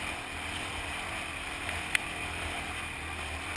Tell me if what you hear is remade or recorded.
recorded